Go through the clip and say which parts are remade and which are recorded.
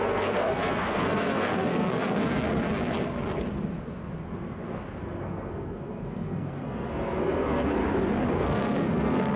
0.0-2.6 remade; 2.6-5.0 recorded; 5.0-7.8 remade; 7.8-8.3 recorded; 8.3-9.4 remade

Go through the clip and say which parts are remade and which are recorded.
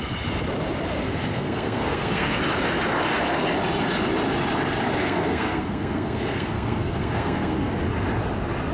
0.0-1.0 recorded; 1.0-2.4 remade; 2.4-5.0 recorded; 5.0-7.7 remade; 7.7-8.7 recorded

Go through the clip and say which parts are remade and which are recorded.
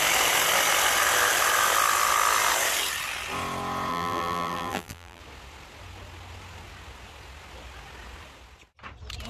0.0-3.9 recorded; 3.9-5.2 remade; 5.2-9.3 recorded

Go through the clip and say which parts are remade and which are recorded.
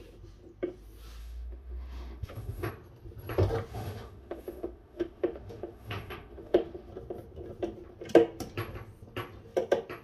0.0-1.2 recorded; 1.2-2.7 remade; 2.7-3.7 recorded; 3.7-6.9 remade; 6.9-10.0 recorded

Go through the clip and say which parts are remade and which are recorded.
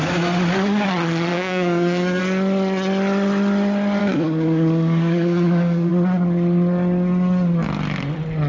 0.0-1.3 recorded; 1.3-2.2 remade; 2.2-4.0 recorded; 4.0-5.9 remade; 5.9-8.5 recorded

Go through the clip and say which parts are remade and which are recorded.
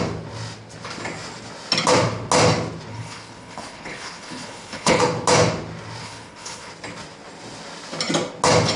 0.0-2.9 recorded; 2.9-5.0 remade; 5.0-6.0 recorded; 6.0-6.7 remade; 6.7-8.8 recorded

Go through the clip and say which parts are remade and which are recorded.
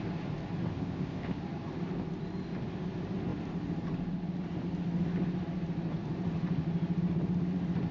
0.0-0.7 recorded; 0.7-1.4 remade; 1.4-7.9 recorded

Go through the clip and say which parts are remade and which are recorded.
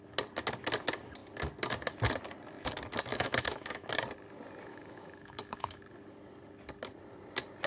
0.0-3.1 recorded; 3.1-3.9 remade; 3.9-4.7 recorded; 4.7-5.8 remade; 5.8-7.7 recorded